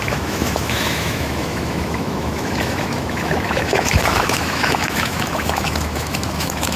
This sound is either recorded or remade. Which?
remade